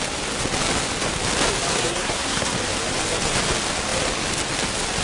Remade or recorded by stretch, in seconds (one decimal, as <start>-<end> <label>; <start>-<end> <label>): 0.0-1.7 recorded; 1.7-2.5 remade; 2.5-5.0 recorded